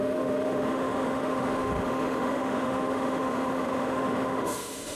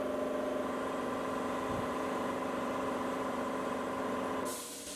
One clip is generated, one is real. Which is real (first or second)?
second